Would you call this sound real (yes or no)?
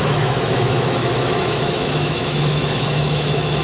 no